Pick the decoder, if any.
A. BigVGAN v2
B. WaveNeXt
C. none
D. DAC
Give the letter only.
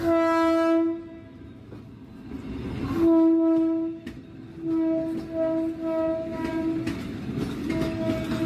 C